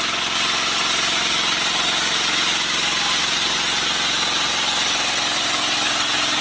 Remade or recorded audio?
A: recorded